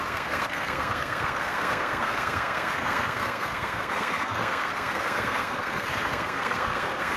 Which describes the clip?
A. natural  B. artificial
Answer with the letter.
B